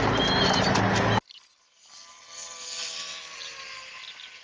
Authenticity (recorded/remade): recorded